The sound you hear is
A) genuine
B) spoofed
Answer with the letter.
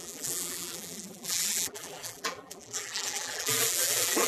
B